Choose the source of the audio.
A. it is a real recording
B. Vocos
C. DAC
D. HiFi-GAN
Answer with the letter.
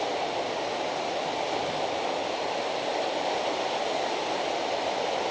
A